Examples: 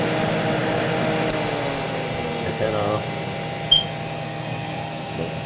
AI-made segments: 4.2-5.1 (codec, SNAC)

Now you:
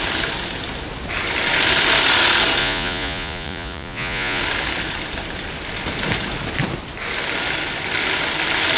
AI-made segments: 2.6-4.4 (vocoder, Vocos)

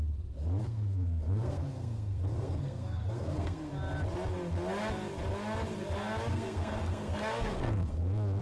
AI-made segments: 0.6-3.7 (codec, SNAC); 6.3-8.4